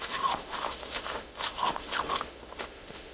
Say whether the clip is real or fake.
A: fake